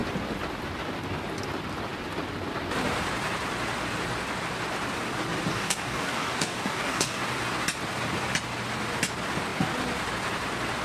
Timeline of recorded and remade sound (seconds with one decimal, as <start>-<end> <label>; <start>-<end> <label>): 0.0-5.5 recorded; 5.5-7.2 remade; 7.2-10.8 recorded